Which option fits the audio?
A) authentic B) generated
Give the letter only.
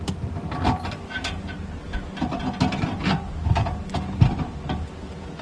A